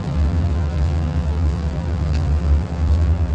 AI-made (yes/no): yes